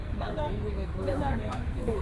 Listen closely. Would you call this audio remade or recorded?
remade